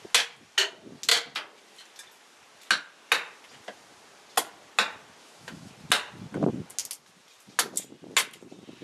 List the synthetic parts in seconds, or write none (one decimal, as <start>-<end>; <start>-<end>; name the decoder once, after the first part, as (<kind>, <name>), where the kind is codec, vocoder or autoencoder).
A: 5.2-5.7 (autoencoder, DAC-VAE)